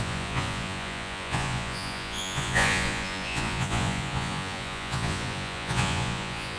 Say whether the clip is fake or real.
fake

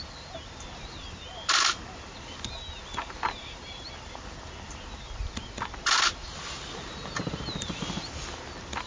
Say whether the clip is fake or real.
real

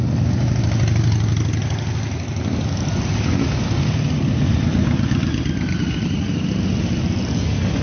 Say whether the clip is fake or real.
real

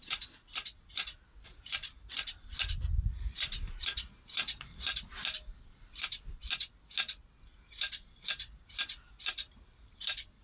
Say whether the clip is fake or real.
real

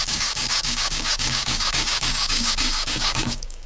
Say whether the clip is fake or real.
fake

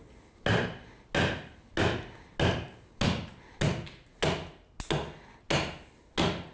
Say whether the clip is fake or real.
real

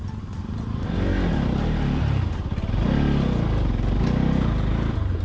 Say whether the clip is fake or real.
real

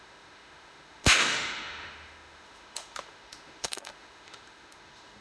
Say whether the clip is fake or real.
fake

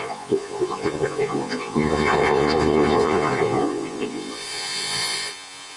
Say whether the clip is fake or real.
fake